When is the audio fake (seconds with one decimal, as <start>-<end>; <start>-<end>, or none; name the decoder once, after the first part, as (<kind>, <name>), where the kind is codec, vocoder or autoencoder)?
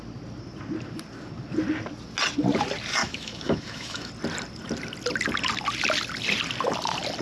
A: 3.0-4.1 (autoencoder, DAC-VAE)